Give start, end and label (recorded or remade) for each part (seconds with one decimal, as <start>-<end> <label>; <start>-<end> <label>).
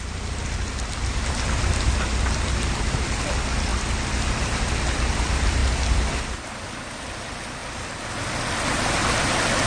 0.0-3.7 remade; 3.7-4.4 recorded; 4.4-5.6 remade; 5.6-7.0 recorded; 7.0-9.7 remade